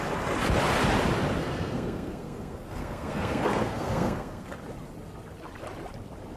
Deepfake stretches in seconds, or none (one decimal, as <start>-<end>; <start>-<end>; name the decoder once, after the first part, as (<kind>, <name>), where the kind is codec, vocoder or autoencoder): 1.4-4.5 (codec, SNAC)